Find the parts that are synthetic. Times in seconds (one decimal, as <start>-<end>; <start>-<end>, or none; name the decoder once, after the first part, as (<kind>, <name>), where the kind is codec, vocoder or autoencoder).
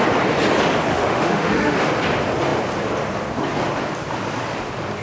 0.9-1.9 (autoencoder, DAC-VAE)